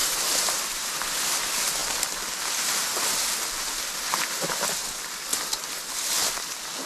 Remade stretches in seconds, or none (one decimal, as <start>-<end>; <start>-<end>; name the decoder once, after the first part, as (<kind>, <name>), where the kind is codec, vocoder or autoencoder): 0.0-1.4 (vocoder, BigVGAN v2); 1.8-4.0